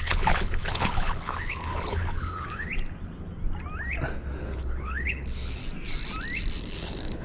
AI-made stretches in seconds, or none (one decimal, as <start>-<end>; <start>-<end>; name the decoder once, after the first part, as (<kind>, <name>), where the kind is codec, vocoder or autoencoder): 0.0-2.7 (codec, HILCodec); 4.4-5.6; 6.6-7.2